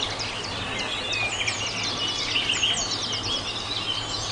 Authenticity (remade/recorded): recorded